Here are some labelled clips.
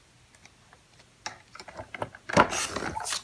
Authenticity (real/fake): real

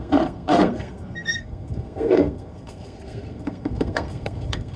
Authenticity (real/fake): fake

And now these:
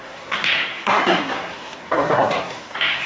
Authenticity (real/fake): fake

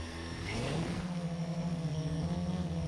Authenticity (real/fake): fake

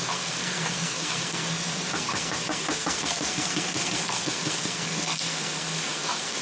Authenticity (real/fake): fake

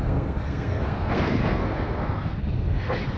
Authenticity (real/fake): fake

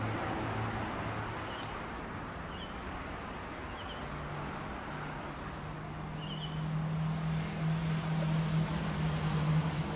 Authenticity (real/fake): real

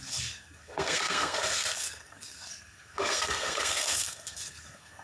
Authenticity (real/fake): fake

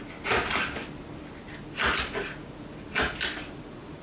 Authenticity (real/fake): real